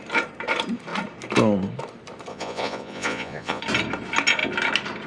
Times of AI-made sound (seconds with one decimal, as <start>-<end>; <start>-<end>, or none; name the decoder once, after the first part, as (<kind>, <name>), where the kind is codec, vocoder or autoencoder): 2.3-3.6 (vocoder, Vocos)